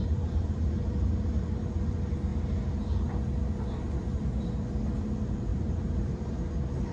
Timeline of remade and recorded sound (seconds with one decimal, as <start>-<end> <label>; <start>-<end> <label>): 0.0-0.7 remade; 0.7-5.5 recorded; 5.5-6.5 remade; 6.5-6.9 recorded